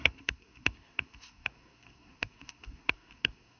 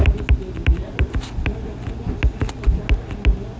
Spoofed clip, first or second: first